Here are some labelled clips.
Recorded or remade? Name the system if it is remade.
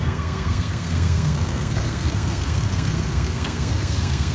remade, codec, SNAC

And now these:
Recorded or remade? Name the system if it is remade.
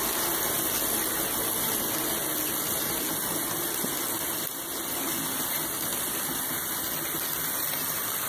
recorded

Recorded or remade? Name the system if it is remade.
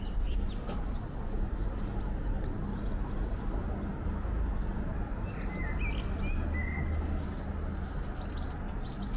recorded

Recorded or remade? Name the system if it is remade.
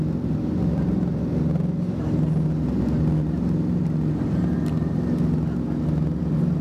recorded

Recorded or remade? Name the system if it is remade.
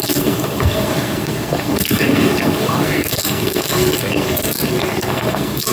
remade, codec, SNAC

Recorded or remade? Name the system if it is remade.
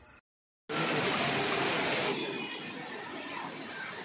recorded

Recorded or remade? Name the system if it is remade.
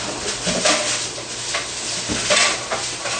recorded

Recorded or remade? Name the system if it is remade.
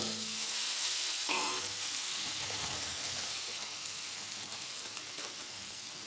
remade, codec, SNAC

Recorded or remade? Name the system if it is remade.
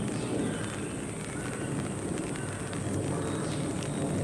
recorded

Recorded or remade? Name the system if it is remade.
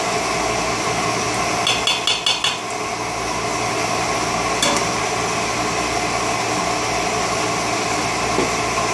recorded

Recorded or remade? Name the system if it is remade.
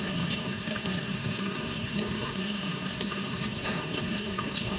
remade, codec, SNAC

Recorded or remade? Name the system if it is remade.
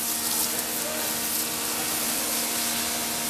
recorded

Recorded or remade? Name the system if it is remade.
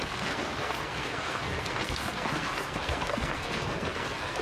remade, codec, SNAC